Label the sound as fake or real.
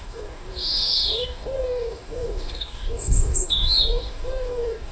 fake